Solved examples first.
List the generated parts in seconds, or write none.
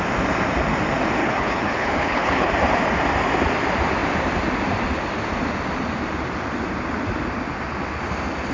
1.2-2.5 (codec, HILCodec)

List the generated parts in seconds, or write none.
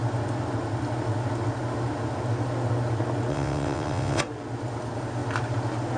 3.3-4.2 (vocoder, WaveNeXt)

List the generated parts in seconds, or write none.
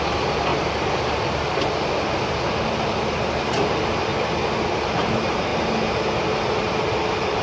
0.0-0.5 (vocoder, BigVGAN v2); 2.3-4.1; 4.7-5.5; 6.6-7.4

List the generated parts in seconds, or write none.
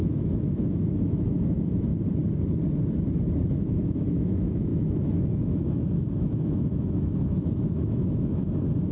0.0-1.9 (autoencoder, DAC-VAE); 3.5-8.9